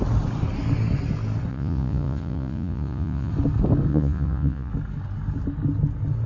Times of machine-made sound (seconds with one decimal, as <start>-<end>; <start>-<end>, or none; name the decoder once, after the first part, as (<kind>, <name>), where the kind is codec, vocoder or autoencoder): 1.5-3.3 (vocoder, Vocos); 3.9-4.7